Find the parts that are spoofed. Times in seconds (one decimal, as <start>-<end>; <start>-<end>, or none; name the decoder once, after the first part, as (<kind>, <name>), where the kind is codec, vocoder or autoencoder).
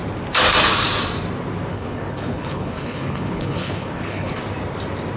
1.7-4.4 (codec, HILCodec)